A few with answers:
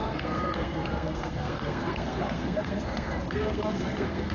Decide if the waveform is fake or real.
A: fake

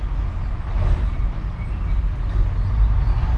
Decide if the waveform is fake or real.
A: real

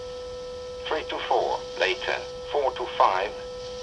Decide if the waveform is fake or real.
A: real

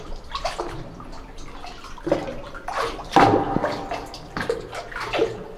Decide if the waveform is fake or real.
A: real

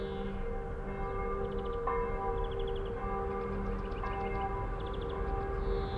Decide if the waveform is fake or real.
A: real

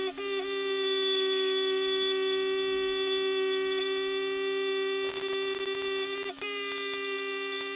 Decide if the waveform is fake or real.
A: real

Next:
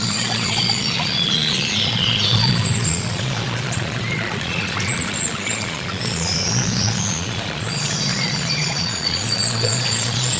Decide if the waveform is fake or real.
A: fake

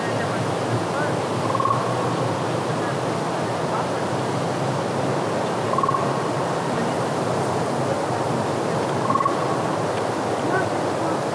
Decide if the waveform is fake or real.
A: real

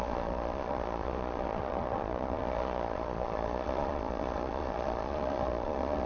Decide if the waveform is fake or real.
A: fake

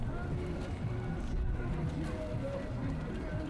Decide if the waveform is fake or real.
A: real